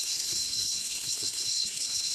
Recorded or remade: remade